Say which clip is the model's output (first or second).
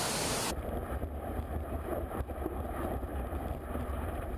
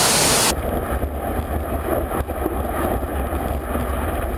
first